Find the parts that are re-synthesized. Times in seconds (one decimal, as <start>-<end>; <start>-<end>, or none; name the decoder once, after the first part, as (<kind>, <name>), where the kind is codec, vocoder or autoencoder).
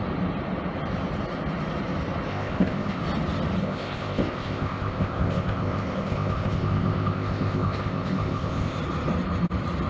2.3-3.0 (codec, ZipCodec); 3.6-8.8